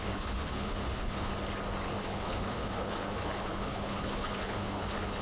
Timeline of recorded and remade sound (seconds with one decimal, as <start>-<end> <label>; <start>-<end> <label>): 0.0-1.3 remade; 1.3-1.9 recorded; 1.9-5.2 remade